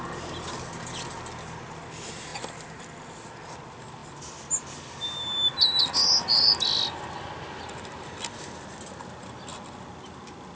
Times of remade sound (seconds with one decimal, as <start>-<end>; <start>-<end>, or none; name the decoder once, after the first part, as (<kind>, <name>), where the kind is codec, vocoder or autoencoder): none